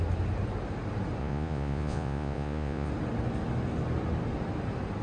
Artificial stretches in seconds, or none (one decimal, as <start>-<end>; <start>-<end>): 1.2-2.9